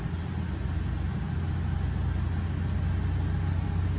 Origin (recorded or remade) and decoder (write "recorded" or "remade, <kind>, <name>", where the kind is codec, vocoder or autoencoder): recorded